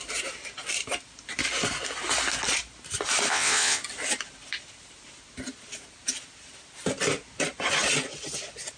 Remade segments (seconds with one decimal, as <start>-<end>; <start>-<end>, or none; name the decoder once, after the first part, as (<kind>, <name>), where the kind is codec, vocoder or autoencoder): 3.3-3.8 (vocoder, WaveNeXt)